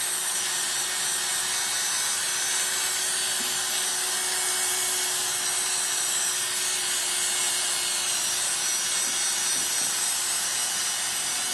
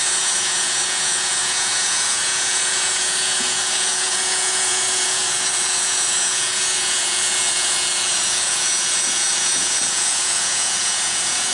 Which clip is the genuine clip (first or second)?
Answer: first